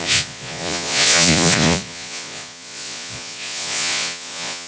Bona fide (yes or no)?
no